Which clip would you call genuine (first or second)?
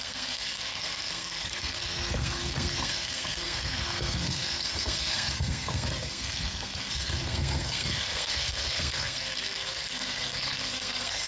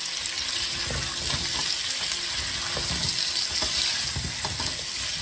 second